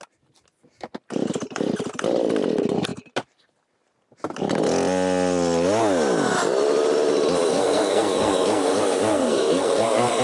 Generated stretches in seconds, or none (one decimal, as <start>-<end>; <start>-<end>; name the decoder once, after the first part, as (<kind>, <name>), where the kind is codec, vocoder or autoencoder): 7.5-10.2 (codec, SNAC)